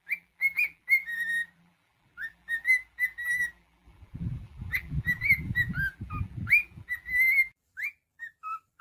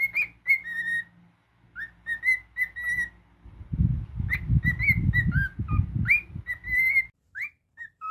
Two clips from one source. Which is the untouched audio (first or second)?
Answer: second